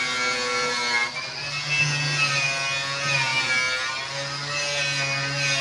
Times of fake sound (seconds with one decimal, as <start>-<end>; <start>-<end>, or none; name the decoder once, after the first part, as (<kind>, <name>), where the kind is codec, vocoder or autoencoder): none